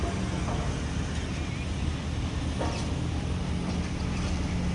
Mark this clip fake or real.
real